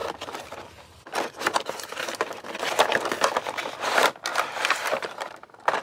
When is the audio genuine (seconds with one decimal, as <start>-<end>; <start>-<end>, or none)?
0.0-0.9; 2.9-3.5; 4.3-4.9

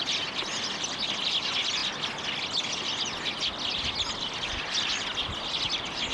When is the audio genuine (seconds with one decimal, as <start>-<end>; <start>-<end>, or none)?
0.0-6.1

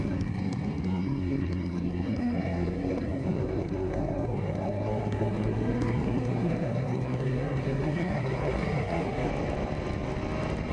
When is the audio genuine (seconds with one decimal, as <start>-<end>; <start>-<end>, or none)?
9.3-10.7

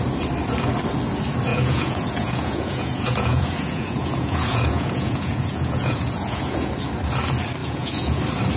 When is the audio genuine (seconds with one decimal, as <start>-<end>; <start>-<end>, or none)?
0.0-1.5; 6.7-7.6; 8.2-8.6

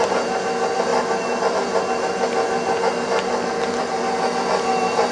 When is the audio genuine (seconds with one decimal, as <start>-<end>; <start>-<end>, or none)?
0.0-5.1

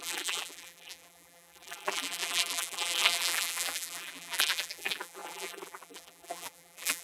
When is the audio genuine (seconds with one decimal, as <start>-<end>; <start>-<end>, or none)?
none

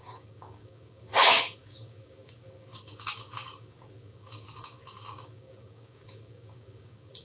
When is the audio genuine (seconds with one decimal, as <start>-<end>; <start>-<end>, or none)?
none